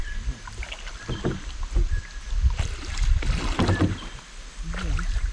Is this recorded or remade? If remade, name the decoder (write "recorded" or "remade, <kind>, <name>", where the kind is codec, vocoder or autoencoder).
recorded